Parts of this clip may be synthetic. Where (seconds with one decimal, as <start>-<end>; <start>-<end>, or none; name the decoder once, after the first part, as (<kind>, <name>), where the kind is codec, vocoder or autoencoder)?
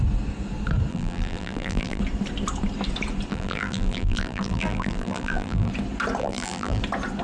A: 0.9-2.0 (vocoder, BigVGAN v2); 3.3-5.7; 6.2-6.8